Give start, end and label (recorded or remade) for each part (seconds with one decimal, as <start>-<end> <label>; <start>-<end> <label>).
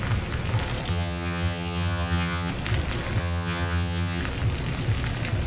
0.0-0.9 recorded; 0.9-2.5 remade; 2.5-3.2 recorded; 3.2-4.2 remade; 4.2-5.5 recorded